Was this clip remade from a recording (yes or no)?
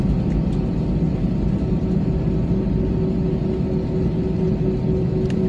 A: no